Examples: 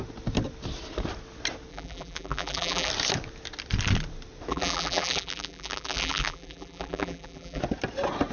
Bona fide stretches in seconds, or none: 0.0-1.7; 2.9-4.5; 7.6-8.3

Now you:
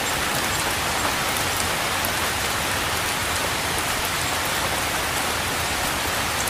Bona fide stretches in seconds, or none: 0.0-3.2; 4.0-6.5

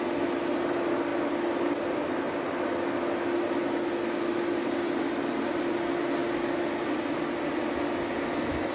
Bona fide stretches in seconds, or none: 0.0-4.6; 5.1-8.7

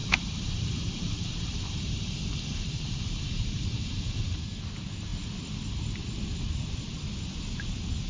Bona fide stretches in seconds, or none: 4.4-8.1

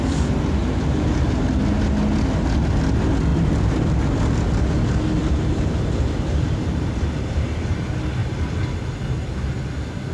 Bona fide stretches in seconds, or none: 0.0-0.6; 1.5-3.3; 3.9-5.2; 7.6-10.1